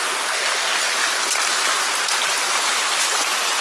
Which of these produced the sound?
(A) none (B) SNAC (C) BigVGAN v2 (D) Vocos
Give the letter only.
A